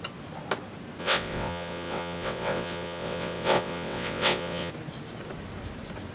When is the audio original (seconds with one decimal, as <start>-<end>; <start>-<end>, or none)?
0.0-1.0; 4.7-6.1